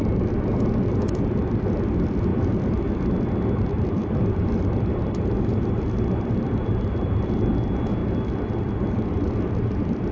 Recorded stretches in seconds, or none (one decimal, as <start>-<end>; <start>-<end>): 0.0-3.7; 7.4-10.1